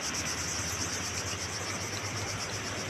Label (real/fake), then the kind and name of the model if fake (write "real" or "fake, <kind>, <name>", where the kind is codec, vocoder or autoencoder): real